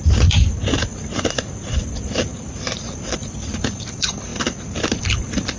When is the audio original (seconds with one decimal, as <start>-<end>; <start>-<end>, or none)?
none